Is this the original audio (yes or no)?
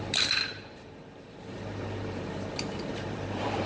no